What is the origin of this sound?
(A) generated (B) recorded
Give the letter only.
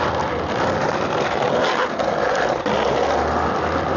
B